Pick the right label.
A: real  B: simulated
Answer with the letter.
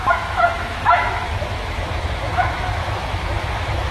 B